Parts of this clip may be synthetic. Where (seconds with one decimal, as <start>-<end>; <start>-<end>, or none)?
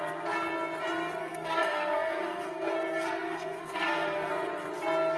1.2-4.3